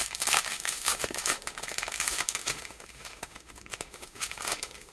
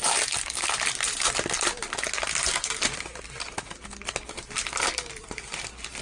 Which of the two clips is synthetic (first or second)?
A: first